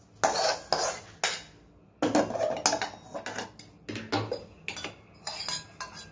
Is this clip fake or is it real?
real